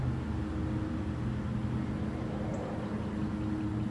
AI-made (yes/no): no